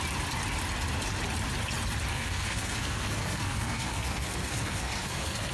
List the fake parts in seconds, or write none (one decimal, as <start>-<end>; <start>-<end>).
2.1-5.5